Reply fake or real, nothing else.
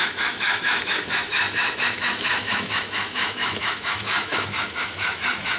fake